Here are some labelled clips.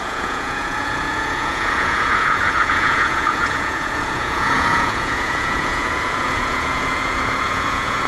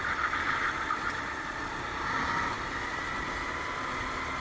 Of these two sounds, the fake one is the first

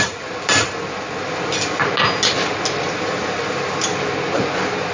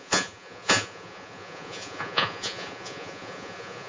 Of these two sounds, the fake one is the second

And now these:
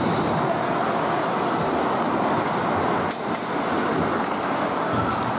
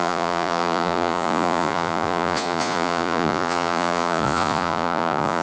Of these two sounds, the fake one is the second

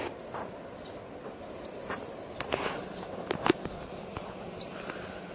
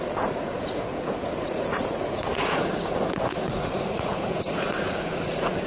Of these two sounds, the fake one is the second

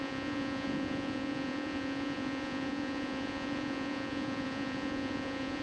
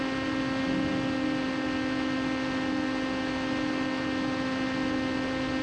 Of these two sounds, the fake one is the first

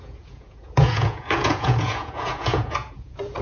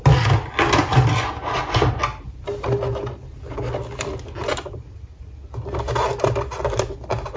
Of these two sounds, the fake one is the first